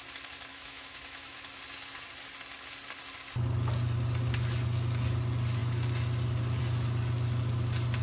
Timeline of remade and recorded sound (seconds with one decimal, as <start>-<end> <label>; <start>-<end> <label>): 0.0-0.5 recorded; 0.5-1.4 remade; 1.4-8.0 recorded